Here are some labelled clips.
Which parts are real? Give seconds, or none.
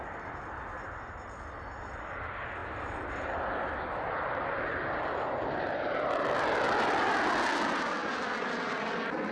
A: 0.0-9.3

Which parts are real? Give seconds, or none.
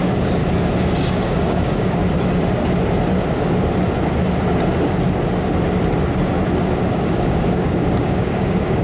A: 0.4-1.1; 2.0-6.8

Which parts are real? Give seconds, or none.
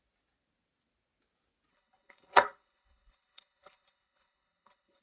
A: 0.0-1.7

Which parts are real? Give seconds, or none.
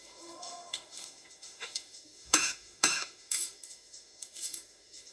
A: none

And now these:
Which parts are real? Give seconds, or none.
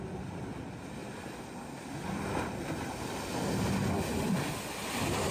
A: 0.0-5.3